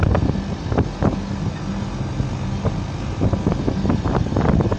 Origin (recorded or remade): recorded